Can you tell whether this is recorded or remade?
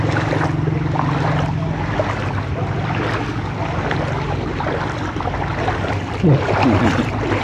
recorded